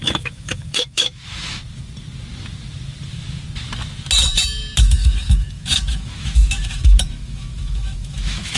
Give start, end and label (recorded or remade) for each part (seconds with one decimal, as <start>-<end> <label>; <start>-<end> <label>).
0.0-1.6 remade; 1.6-4.8 recorded; 4.8-8.6 remade